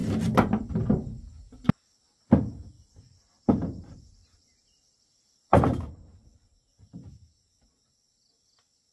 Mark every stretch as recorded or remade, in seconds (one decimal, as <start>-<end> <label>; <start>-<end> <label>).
0.0-8.9 recorded